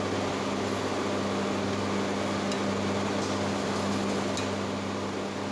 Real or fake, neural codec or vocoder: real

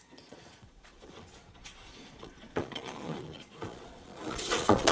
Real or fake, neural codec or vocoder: fake, vocoder, Vocos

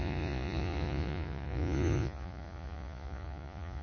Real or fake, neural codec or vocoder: fake, vocoder, Vocos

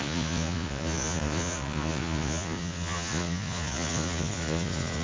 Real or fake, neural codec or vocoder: fake, vocoder, Vocos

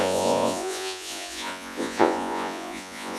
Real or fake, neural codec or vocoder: fake, vocoder, Vocos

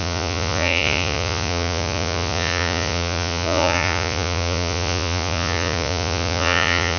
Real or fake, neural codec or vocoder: fake, vocoder, Vocos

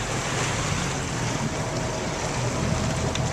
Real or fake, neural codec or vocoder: real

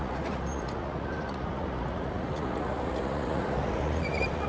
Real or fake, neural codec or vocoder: fake, vocoder, Vocos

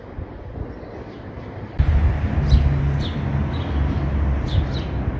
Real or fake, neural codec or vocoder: real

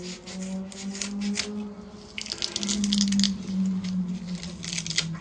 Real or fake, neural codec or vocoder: real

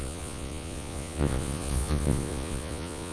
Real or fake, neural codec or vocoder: fake, vocoder, Vocos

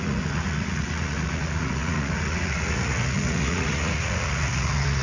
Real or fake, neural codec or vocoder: fake, vocoder, Vocos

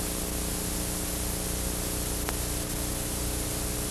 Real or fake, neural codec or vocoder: real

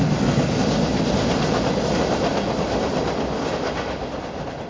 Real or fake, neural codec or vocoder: real